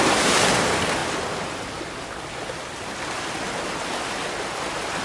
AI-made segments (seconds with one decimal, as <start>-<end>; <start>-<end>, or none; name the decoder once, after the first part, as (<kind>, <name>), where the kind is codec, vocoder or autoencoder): none